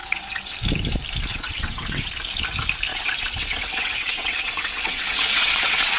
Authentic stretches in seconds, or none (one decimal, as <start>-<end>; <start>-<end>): 0.5-1.3; 2.1-2.9